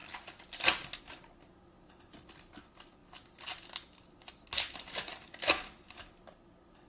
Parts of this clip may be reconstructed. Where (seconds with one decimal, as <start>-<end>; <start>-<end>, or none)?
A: none